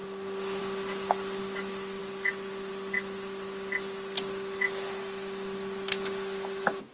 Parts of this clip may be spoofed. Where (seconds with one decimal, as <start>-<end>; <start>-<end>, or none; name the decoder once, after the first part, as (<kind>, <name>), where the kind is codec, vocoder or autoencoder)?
none